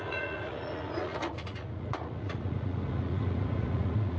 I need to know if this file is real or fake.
fake